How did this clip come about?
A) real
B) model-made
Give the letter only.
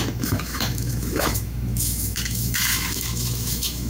B